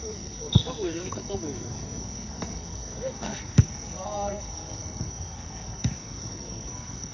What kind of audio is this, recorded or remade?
remade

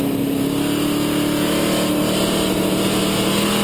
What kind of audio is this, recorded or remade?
recorded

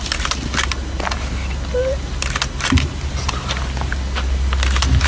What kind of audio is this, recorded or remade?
recorded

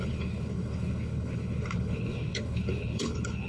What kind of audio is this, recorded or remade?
remade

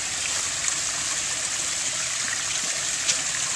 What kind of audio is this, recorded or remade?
recorded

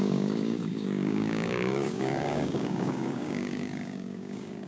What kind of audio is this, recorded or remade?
remade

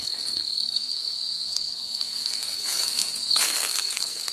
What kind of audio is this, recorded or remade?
remade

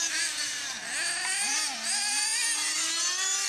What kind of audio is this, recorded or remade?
recorded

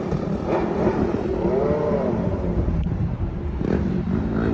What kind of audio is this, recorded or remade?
remade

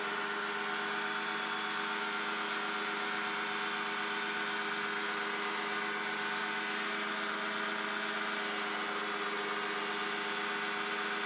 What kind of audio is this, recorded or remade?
recorded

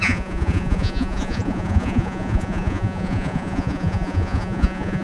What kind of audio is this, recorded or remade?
remade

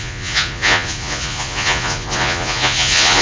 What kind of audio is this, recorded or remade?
remade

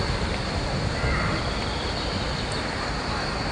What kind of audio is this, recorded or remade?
recorded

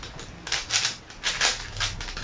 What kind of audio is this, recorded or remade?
recorded